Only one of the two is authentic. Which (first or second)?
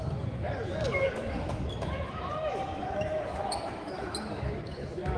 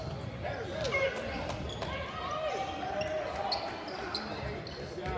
second